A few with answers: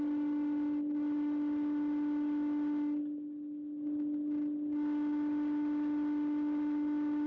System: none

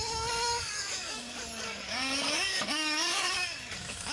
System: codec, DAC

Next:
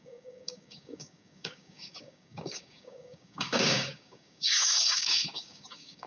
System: codec, DAC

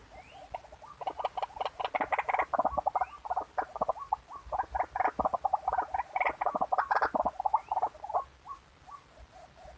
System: none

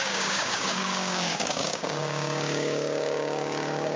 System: codec, DAC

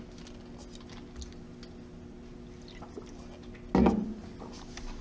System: none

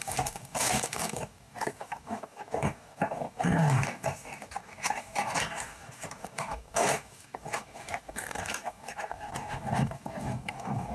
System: codec, DAC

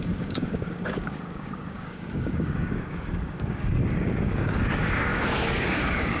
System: codec, DAC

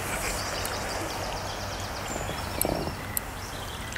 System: none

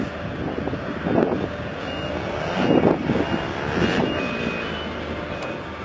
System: none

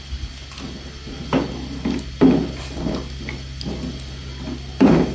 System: none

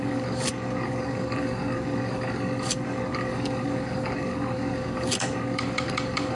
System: codec, DAC